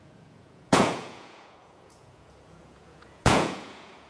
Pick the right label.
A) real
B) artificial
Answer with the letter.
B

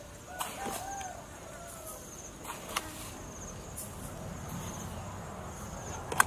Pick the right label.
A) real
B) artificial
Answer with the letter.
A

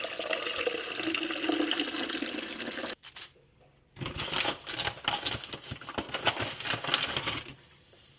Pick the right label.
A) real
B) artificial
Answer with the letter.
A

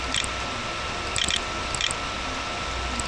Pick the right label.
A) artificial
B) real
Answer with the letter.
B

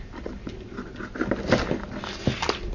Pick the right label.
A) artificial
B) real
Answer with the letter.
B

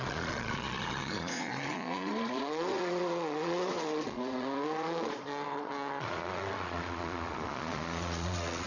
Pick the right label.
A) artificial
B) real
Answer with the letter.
A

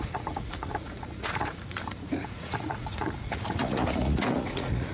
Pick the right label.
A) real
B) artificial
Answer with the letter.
B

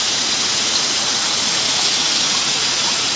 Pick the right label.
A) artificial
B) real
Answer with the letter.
A